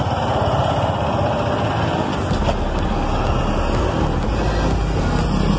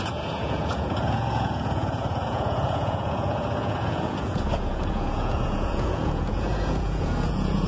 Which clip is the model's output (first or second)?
second